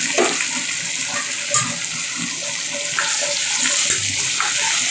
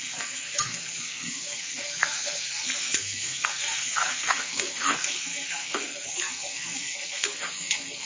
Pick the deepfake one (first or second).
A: second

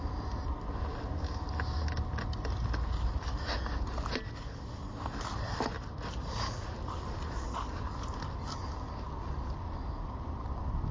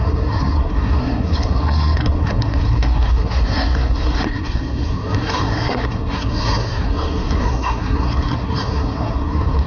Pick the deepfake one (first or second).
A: second